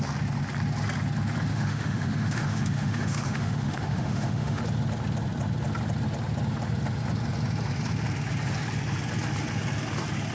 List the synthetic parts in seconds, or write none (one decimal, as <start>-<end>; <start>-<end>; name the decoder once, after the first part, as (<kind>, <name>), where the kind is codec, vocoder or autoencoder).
1.5-4.6 (autoencoder, DAC-VAE)